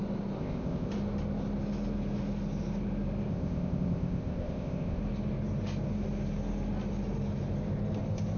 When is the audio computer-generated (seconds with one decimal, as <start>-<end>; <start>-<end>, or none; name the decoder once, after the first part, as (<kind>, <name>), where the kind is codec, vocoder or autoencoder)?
0.4-0.9 (codec, ZipCodec); 3.3-5.0